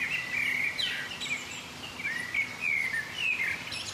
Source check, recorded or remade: remade